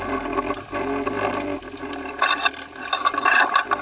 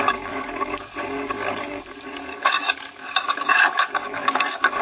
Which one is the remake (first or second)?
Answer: second